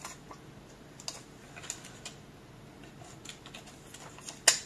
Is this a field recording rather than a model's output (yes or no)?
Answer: yes